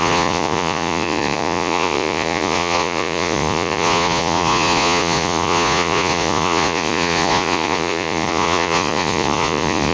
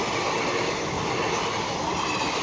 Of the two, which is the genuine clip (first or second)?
second